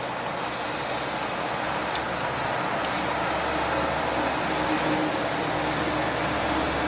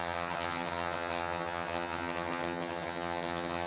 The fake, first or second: second